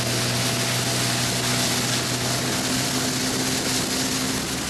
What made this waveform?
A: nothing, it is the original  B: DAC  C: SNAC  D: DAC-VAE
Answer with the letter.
A